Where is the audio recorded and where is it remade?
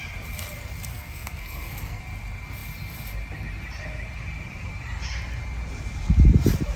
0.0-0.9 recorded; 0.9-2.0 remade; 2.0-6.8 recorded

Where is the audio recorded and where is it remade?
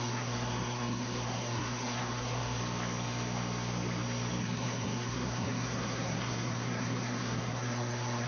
0.0-2.6 remade; 2.6-4.4 recorded; 4.4-8.3 remade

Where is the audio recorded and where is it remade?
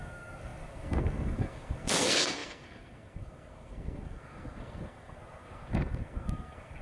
0.0-6.8 remade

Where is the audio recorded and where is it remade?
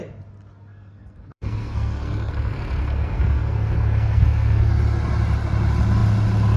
0.0-0.7 recorded; 0.7-4.7 remade; 4.7-6.6 recorded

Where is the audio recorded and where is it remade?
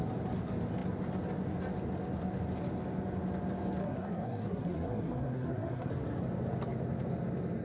0.0-3.8 recorded; 3.8-5.9 remade; 5.9-7.6 recorded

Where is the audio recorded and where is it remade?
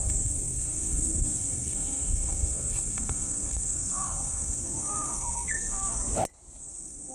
0.0-6.0 remade; 6.0-6.6 recorded; 6.6-7.1 remade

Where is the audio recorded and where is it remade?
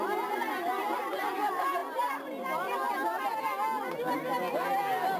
0.0-5.2 recorded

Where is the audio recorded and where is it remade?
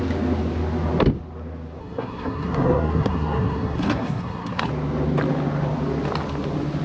0.0-1.8 recorded; 1.8-4.7 remade; 4.7-6.8 recorded